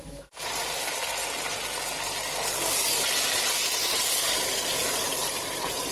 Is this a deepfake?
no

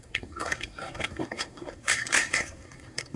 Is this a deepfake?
yes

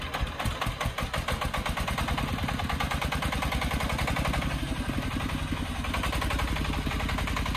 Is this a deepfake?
no